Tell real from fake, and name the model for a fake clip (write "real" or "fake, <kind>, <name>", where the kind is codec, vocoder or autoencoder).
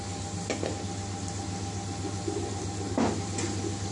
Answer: real